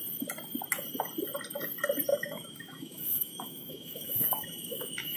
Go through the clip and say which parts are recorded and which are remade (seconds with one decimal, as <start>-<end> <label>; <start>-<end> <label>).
0.0-2.1 recorded; 2.1-5.2 remade